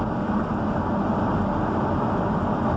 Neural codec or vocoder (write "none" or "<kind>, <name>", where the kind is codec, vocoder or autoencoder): none